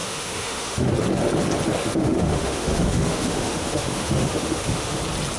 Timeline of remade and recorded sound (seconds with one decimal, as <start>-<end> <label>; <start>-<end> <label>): 0.0-0.9 remade; 0.9-1.8 recorded; 1.8-5.0 remade; 5.0-5.4 recorded

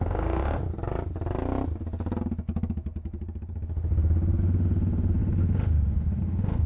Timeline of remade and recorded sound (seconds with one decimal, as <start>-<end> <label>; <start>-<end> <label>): 0.0-0.6 remade; 0.6-4.4 recorded; 4.4-6.7 remade

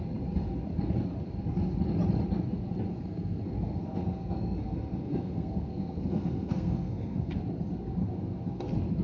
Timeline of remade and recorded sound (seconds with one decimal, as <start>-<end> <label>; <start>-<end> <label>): 0.0-2.9 recorded; 2.9-7.3 remade; 7.3-8.0 recorded; 8.0-8.6 remade; 8.6-9.0 recorded

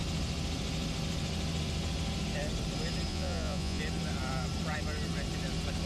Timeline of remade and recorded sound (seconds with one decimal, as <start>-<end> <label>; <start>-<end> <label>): 0.0-3.1 recorded; 3.1-3.8 remade; 3.8-5.9 recorded